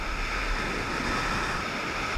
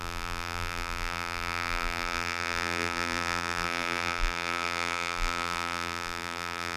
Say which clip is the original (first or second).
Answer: first